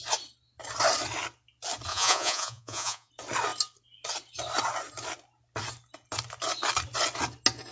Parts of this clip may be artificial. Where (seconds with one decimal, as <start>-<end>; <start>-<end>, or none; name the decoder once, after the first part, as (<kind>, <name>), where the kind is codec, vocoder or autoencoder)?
1.9-3.1 (vocoder, Vocos)